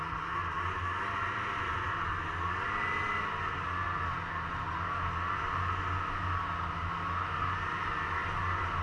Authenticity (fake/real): real